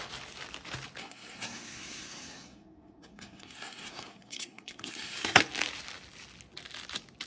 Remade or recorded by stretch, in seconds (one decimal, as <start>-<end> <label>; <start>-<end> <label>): 0.0-1.0 recorded; 1.0-5.4 remade; 5.4-7.3 recorded